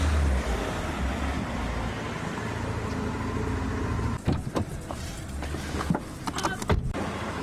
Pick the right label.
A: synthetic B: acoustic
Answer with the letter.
B